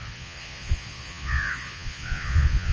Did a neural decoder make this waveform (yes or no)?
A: yes